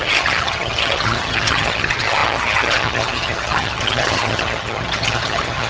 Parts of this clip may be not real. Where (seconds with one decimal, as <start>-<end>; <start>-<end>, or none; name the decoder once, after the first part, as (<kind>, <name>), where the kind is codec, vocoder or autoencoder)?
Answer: 0.0-5.7 (vocoder, HiFi-GAN)